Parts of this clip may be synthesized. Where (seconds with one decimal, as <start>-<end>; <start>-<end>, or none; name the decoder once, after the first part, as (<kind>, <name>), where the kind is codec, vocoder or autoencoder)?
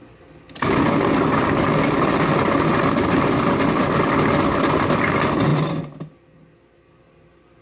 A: none